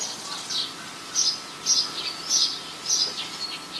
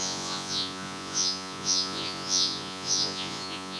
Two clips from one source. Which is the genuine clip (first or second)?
first